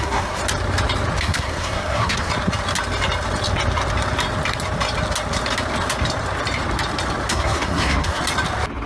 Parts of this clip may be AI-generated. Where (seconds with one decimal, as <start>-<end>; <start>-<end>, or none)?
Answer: 0.0-0.4; 1.2-2.3; 7.3-8.2